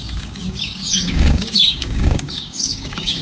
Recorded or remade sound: remade